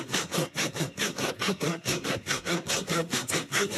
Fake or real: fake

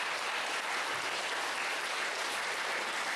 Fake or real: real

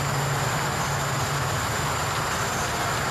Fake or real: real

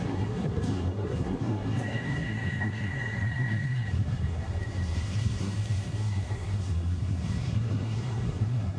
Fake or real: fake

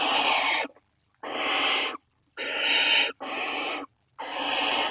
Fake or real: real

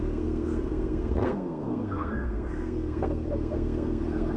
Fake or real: fake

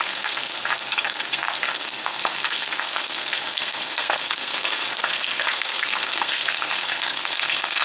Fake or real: fake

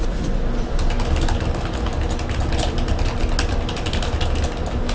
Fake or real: real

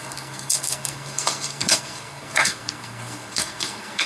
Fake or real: fake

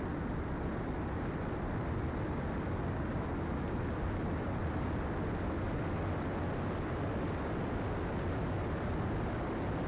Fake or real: real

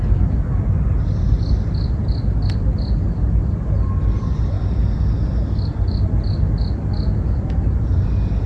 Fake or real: real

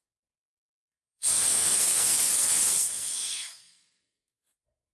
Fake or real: fake